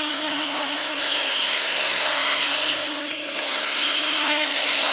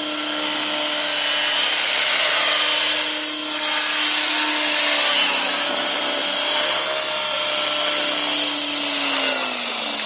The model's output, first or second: first